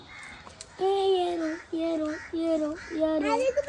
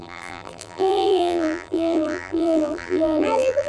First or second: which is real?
first